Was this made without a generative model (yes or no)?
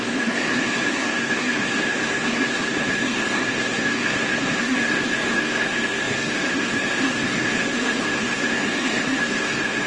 no